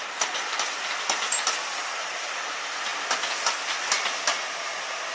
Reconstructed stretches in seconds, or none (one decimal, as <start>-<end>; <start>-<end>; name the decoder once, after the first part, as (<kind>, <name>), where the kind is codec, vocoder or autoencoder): none